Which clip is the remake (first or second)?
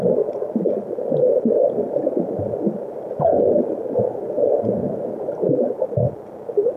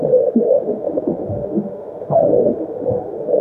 second